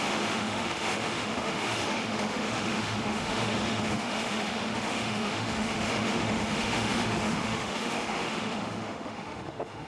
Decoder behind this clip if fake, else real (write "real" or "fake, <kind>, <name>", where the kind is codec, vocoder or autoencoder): fake, autoencoder, DAC-VAE